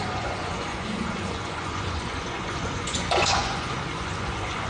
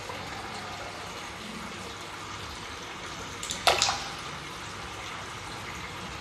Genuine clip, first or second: second